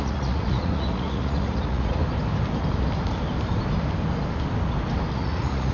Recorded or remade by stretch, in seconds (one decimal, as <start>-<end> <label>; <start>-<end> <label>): 0.0-2.0 remade; 2.0-5.1 recorded; 5.1-5.7 remade